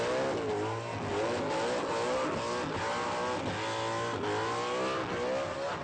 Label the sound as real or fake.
real